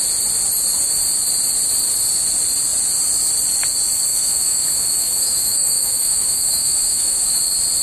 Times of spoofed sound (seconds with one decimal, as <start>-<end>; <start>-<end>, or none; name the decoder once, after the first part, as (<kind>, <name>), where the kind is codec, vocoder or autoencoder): 4.1-7.3 (autoencoder, DAC-VAE)